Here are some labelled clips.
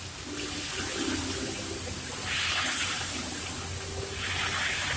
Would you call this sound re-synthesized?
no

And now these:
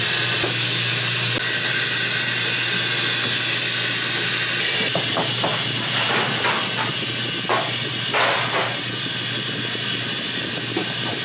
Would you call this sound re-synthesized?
no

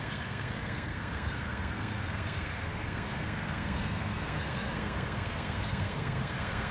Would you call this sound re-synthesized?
yes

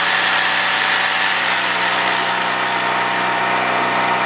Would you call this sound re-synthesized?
no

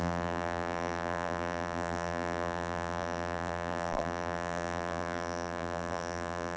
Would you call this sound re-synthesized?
yes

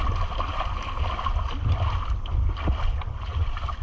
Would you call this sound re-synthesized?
no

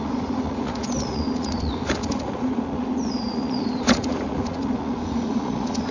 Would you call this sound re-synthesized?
yes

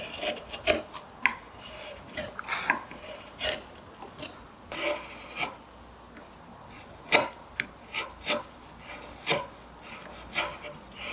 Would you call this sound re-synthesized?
no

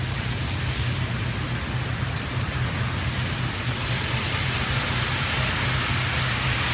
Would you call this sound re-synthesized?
no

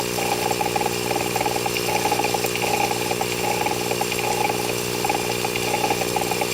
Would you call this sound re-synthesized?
no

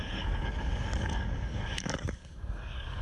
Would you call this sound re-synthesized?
yes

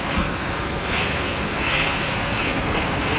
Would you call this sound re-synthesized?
yes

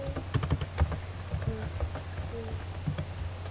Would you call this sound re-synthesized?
no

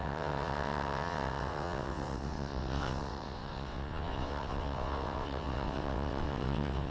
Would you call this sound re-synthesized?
yes